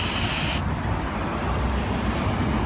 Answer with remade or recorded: recorded